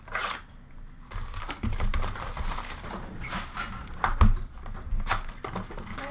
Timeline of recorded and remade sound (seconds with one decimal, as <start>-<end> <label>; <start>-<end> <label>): 0.0-6.1 recorded